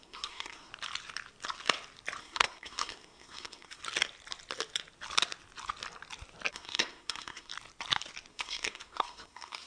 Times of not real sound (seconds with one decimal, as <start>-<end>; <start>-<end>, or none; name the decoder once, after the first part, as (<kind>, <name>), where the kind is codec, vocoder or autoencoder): 0.0-0.7 (codec, SNAC); 2.2-3.8; 6.5-7.5; 8.3-9.7